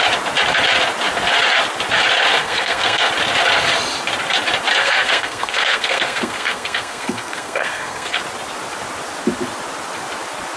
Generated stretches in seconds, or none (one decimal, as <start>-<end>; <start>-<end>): 2.4-3.1; 4.8-8.2